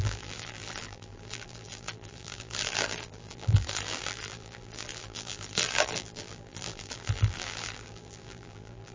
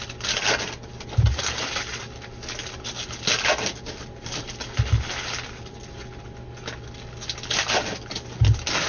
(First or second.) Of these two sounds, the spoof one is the first